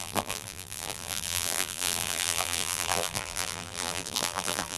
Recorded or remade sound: remade